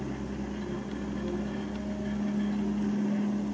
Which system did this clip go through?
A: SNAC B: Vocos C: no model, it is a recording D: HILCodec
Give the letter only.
C